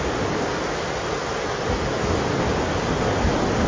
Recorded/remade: recorded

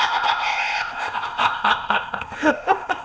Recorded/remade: remade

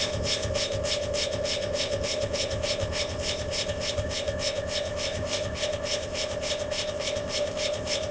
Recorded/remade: remade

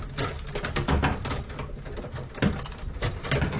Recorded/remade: recorded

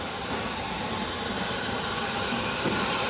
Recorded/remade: recorded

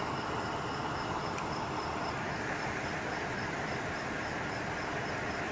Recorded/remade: recorded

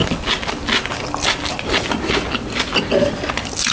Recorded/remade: recorded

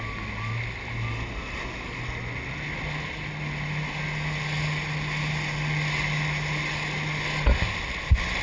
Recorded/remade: recorded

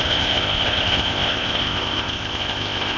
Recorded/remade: remade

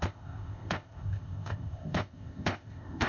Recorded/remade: remade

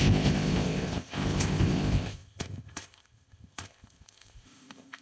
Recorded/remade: remade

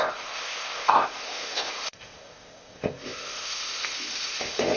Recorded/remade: remade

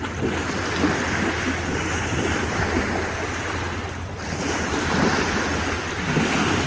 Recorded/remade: recorded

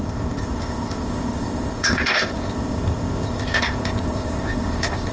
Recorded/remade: remade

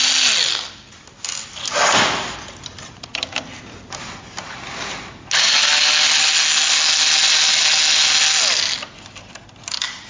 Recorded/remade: recorded